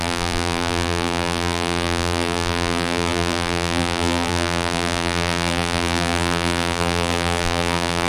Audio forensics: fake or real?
fake